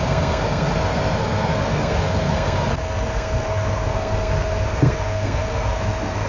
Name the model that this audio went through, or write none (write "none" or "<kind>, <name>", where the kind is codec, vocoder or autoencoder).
codec, SNAC